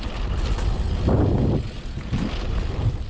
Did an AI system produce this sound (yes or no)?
no